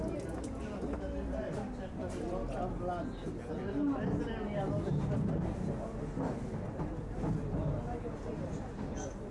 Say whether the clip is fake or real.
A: real